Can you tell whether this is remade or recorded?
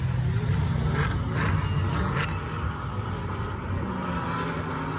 recorded